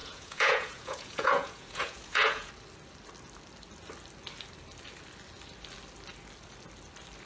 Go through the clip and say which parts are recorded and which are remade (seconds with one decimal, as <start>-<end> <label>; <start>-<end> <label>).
0.0-2.5 remade; 2.5-7.3 recorded